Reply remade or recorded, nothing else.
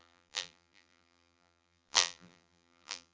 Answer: remade